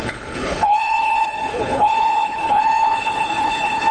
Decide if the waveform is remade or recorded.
remade